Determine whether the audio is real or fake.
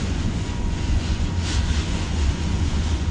fake